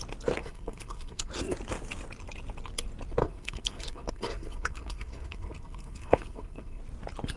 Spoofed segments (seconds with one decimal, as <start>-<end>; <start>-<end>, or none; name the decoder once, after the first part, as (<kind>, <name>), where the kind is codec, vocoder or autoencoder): 0.4-1.3 (codec, SNAC); 3.2-6.8